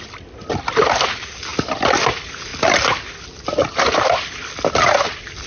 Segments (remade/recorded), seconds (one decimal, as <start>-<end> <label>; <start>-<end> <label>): 0.0-5.5 recorded